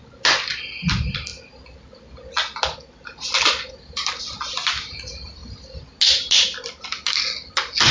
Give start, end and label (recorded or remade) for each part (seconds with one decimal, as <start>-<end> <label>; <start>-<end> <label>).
0.0-7.9 recorded